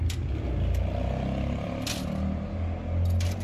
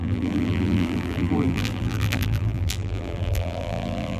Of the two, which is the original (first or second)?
first